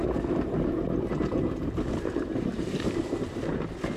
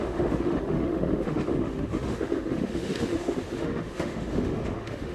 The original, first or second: first